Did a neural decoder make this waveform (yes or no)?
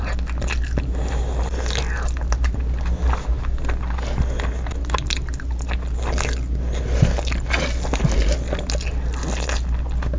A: no